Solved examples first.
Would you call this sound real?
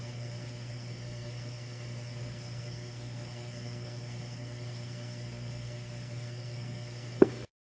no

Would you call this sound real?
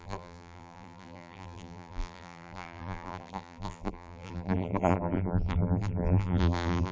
no